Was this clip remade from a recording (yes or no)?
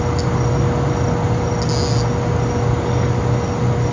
no